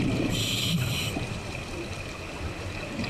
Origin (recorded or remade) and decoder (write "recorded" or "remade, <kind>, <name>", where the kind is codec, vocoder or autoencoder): recorded